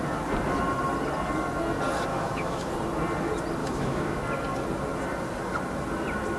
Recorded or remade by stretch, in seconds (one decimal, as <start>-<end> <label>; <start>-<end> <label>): 0.0-2.1 recorded; 2.1-2.7 remade; 2.7-3.6 recorded; 3.6-4.2 remade; 4.2-6.4 recorded